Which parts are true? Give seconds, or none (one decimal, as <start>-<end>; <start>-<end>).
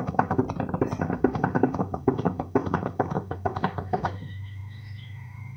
0.4-1.0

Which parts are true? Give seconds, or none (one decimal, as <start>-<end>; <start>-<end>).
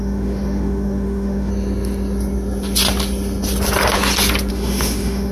1.5-4.5